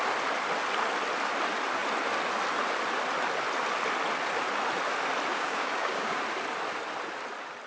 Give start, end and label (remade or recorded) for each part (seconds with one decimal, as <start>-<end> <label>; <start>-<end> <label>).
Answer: 0.0-5.3 recorded; 5.3-6.2 remade; 6.2-7.7 recorded